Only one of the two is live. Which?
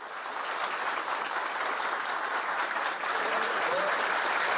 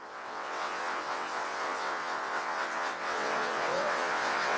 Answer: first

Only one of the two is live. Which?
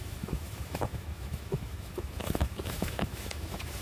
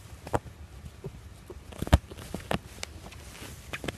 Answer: second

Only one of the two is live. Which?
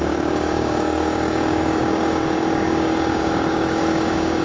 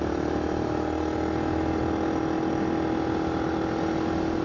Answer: second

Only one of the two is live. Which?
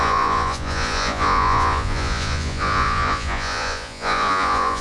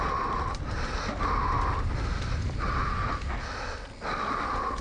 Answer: second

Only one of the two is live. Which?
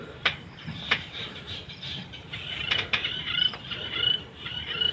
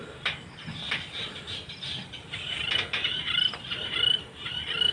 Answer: second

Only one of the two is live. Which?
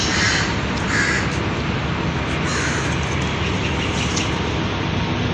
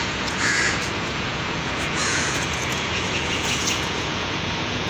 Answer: first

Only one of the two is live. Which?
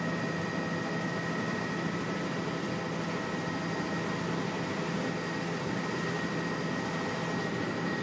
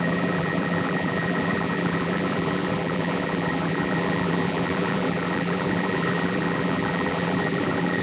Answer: first